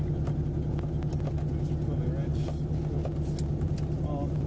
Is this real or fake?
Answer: real